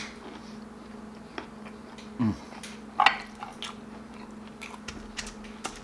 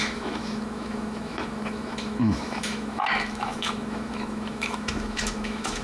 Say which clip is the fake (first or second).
second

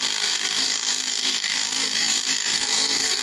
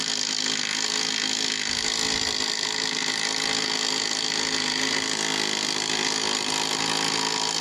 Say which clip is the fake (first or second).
first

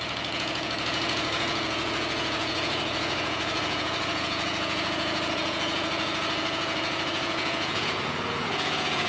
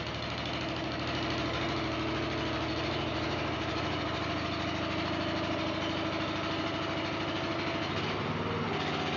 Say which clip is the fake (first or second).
first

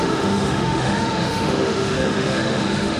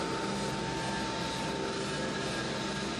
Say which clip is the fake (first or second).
first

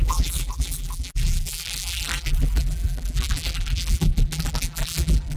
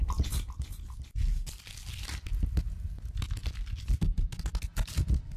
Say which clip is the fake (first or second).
first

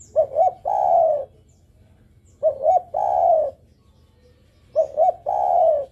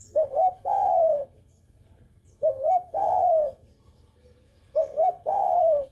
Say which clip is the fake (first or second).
second